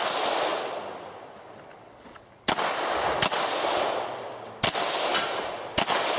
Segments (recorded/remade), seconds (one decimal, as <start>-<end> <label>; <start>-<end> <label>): 0.0-6.2 recorded